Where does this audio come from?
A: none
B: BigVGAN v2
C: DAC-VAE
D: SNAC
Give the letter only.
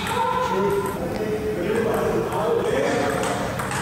A